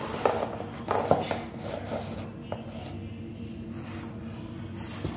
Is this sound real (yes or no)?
yes